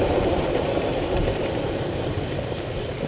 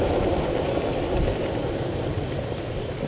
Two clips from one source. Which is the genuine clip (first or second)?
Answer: second